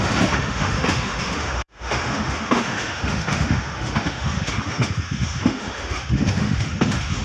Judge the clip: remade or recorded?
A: remade